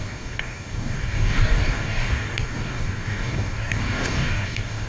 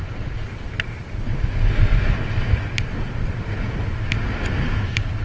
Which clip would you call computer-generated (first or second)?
first